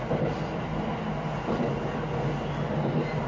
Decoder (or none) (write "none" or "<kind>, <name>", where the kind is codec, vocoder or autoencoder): none